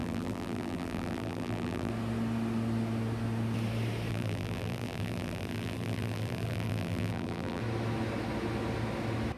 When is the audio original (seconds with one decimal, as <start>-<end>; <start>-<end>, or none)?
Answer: 1.9-4.1; 7.6-9.4